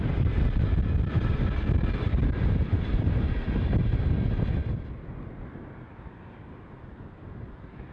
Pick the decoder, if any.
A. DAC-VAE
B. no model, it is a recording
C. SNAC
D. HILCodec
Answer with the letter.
B